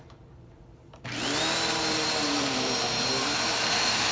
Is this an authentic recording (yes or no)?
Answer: no